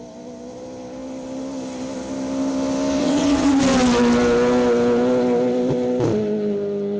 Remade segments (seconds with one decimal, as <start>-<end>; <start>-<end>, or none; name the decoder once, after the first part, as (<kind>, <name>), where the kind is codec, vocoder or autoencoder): 3.0-3.6 (vocoder, WaveNeXt)